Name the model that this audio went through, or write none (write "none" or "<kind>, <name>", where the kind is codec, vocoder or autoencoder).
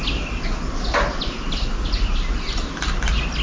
none